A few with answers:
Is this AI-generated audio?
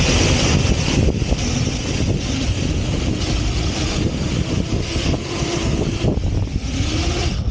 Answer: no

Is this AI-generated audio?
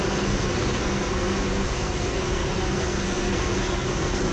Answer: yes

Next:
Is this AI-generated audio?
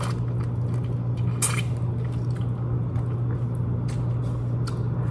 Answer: no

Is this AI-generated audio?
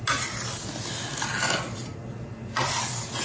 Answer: no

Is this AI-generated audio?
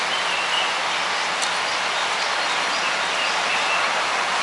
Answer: no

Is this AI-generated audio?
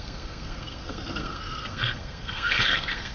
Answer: yes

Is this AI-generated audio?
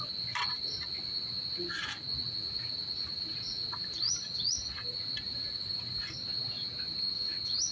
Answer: no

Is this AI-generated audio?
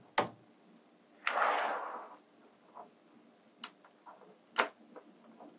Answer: no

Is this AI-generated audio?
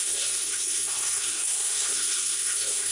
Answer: yes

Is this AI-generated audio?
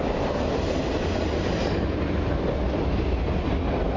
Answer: no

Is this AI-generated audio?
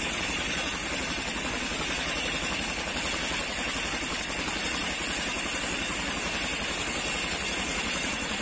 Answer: no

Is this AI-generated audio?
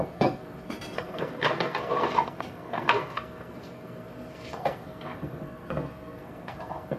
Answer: yes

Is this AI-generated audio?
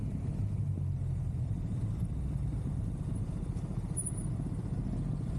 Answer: no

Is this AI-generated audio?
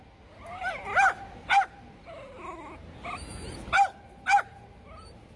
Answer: no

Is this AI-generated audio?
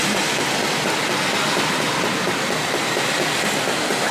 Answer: no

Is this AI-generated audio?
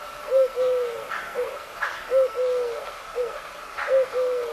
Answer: yes